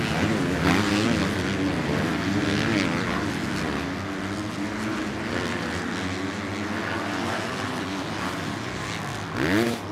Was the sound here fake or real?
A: real